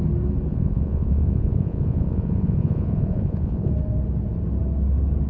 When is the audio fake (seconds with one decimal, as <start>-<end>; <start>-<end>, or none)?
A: 0.5-3.7